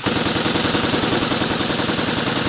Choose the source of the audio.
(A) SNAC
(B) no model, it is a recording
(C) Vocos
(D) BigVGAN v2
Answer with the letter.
B